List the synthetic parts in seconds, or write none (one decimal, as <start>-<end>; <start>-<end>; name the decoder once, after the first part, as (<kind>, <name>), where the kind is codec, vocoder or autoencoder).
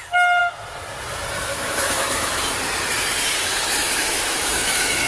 1.5-2.4 (autoencoder, DAC-VAE); 3.5-5.1